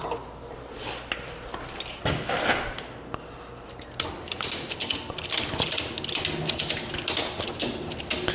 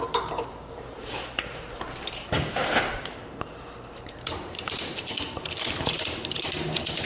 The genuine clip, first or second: first